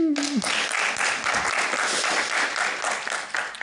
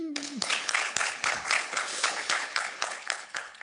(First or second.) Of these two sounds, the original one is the first